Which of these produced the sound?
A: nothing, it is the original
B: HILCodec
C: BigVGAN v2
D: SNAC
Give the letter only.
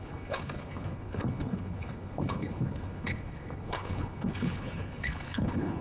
B